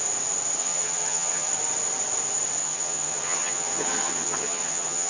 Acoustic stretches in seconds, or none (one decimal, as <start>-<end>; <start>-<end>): 0.0-0.6; 1.5-2.6